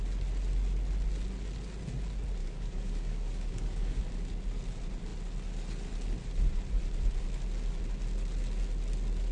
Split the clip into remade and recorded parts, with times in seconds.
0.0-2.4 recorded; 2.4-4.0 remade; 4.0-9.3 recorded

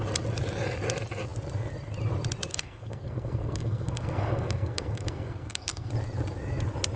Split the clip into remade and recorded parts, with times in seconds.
0.0-2.5 recorded; 2.5-5.9 remade; 5.9-7.0 recorded

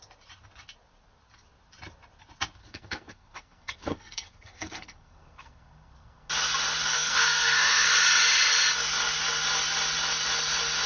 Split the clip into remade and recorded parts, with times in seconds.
0.0-2.6 recorded; 2.6-6.3 remade; 6.3-6.9 recorded; 6.9-7.9 remade; 7.9-10.9 recorded

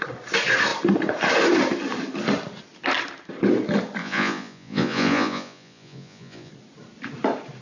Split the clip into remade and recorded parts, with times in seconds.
0.0-4.0 recorded; 4.0-6.5 remade; 6.5-7.6 recorded

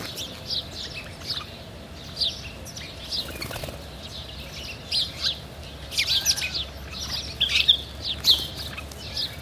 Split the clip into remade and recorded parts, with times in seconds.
0.0-9.4 recorded